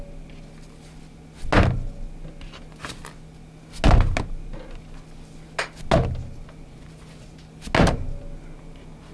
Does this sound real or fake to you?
real